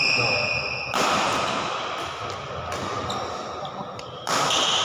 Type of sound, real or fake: real